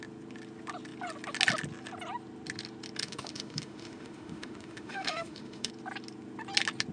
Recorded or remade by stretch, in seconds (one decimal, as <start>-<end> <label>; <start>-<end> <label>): 0.0-3.0 recorded; 3.0-5.7 remade; 5.7-6.9 recorded